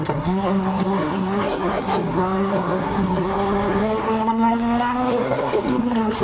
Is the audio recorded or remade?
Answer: remade